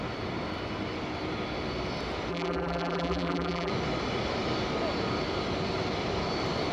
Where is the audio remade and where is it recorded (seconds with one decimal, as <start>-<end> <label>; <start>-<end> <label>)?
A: 0.0-2.3 recorded; 2.3-3.7 remade; 3.7-6.7 recorded